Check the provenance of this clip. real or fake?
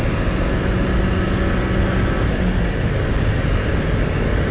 real